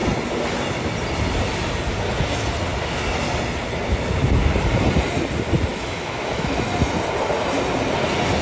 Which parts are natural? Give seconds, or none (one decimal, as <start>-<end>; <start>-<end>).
0.0-5.7; 6.5-8.4